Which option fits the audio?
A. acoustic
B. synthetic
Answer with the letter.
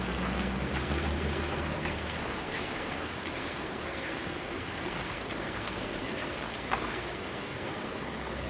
B